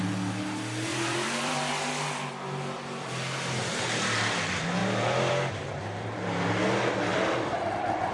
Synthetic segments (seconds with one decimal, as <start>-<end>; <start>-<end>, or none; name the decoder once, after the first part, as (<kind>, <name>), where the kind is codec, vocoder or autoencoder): 0.9-1.7 (vocoder, BigVGAN v2); 7.1-8.1